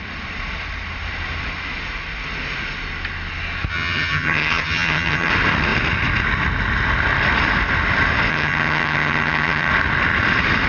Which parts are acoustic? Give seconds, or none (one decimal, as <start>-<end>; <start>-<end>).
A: 0.0-3.7; 5.3-8.3; 9.7-10.7